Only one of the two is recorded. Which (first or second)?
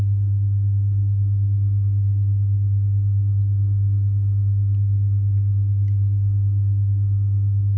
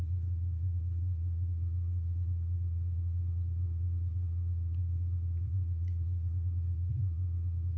first